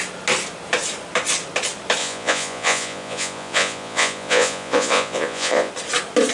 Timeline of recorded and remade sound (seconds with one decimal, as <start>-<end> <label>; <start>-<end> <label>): 0.0-2.0 recorded; 2.0-5.7 remade; 5.7-6.3 recorded